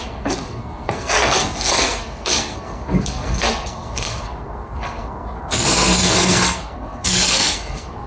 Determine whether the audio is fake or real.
fake